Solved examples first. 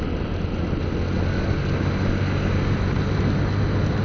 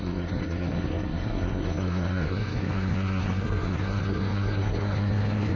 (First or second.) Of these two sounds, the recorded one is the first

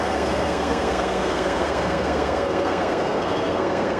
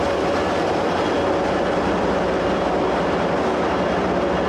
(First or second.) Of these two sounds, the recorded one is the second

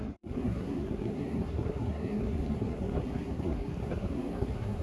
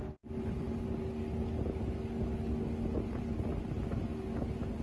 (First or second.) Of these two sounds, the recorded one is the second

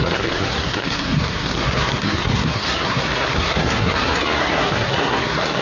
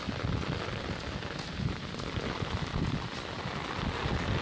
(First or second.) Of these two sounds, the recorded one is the second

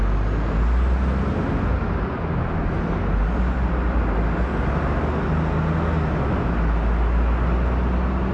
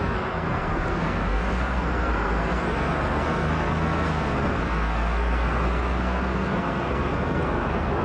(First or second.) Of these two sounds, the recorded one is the first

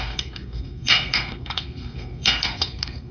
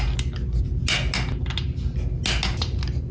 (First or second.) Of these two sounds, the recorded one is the second